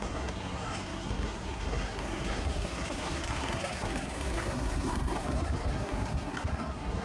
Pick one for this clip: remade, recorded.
remade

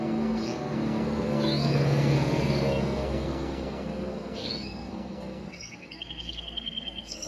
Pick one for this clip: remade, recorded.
remade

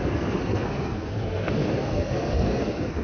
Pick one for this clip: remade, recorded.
remade